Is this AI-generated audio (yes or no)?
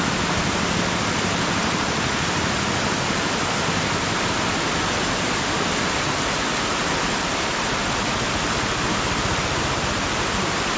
no